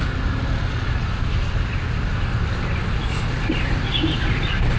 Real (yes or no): yes